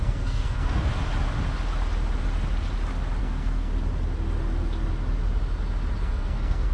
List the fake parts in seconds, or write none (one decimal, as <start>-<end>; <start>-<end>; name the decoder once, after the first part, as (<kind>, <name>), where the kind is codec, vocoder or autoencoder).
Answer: 0.0-0.9 (codec, SNAC); 3.2-3.7; 6.0-6.7